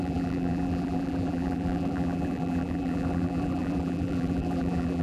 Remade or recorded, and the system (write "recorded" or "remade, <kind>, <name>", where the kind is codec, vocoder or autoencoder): remade, vocoder, BigVGAN v2